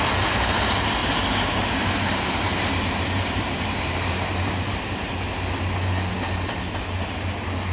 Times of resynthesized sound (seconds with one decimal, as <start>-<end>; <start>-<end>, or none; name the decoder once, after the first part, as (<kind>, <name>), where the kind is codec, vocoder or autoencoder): 1.0-5.1 (vocoder, BigVGAN v2)